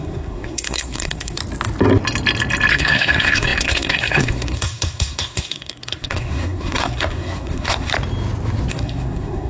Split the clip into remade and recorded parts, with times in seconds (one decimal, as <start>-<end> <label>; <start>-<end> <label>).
0.0-1.4 remade; 1.4-2.7 recorded; 2.7-7.9 remade; 7.9-8.7 recorded; 8.7-9.5 remade